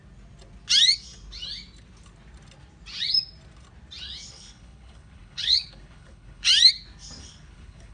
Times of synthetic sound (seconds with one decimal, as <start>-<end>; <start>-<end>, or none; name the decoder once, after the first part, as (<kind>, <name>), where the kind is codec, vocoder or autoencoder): 4.3-6.5 (codec, HILCodec); 7.2-7.9